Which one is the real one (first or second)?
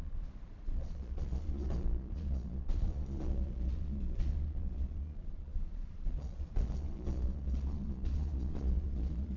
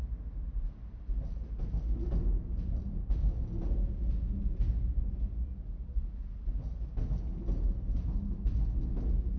second